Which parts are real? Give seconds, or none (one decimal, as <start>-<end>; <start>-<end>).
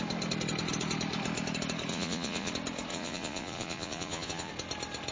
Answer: 0.0-1.9; 2.5-2.9; 4.5-5.1